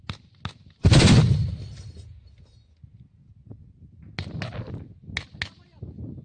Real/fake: real